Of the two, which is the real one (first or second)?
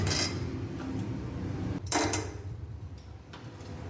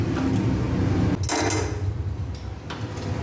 second